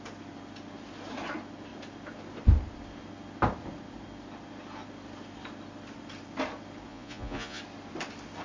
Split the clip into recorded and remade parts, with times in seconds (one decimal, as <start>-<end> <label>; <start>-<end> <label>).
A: 0.0-6.9 recorded; 6.9-7.6 remade; 7.6-8.4 recorded